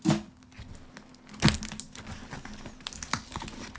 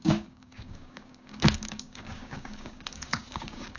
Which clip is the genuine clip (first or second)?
first